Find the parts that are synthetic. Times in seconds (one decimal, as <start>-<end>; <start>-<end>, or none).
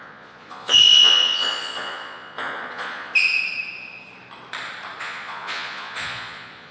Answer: 0.0-3.1; 5.0-6.7